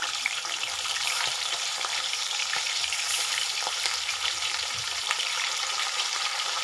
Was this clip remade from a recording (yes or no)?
yes